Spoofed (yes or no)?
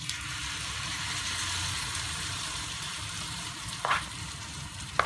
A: yes